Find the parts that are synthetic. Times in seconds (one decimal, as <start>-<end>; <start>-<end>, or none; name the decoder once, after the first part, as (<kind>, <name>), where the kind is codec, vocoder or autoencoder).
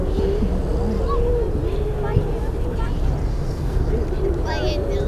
3.3-3.9 (codec, SNAC)